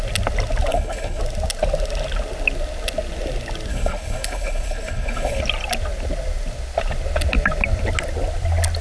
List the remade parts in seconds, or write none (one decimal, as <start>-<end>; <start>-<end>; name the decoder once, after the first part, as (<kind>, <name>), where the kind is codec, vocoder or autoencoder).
0.7-1.2 (codec, HILCodec); 3.7-5.4